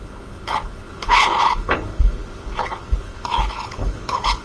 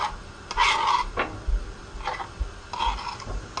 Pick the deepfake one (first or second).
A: first